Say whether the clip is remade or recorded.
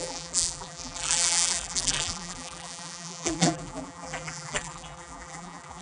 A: remade